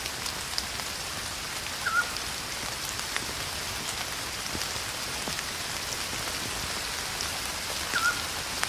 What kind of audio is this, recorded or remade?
recorded